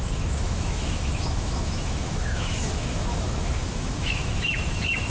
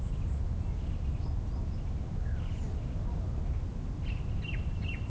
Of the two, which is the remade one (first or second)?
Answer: first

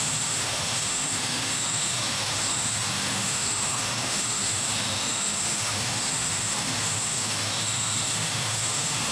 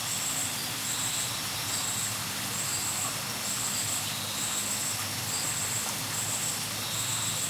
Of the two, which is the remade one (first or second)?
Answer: first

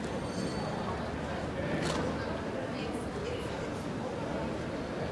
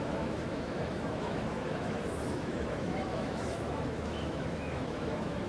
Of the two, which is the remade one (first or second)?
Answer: second